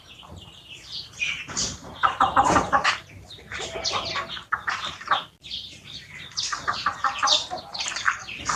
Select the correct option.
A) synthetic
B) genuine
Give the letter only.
A